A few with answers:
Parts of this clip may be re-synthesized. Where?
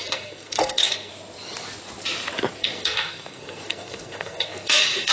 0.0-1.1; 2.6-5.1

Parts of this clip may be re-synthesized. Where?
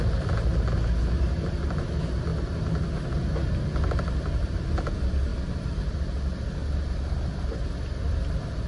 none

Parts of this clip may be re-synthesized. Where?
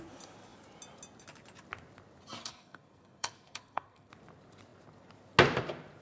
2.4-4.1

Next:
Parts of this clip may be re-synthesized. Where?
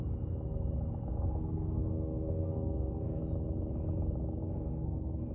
1.1-3.2; 4.4-5.3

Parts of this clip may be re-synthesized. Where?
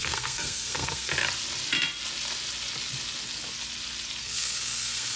0.0-1.1; 4.2-5.2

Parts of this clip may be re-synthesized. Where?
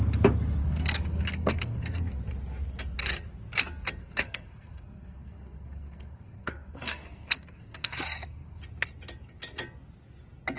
0.6-2.2; 4.0-8.6